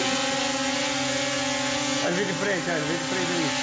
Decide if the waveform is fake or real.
real